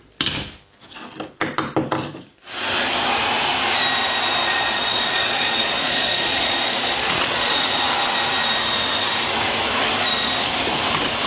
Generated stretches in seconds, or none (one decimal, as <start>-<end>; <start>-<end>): 4.4-7.6